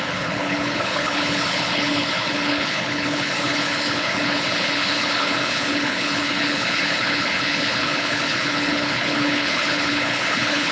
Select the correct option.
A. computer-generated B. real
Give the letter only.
A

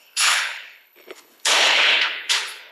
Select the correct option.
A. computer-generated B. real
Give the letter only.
A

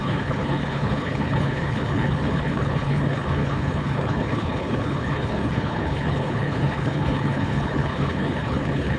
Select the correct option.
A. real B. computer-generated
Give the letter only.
B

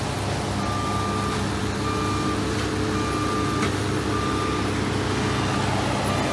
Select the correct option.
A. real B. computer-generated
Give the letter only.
A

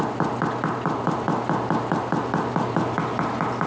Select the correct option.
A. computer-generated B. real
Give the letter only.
B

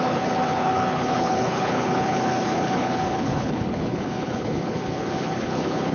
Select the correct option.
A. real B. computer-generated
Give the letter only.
B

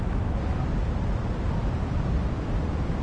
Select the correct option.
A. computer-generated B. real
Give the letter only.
B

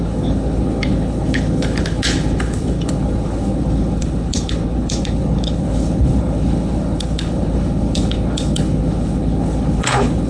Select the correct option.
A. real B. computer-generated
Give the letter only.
B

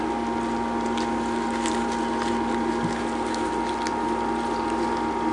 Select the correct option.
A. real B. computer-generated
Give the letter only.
A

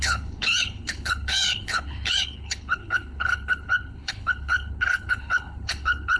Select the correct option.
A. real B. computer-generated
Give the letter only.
B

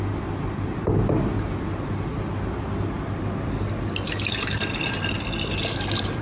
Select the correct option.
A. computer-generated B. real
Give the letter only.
B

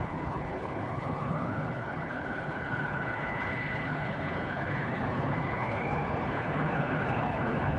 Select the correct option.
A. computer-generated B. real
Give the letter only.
A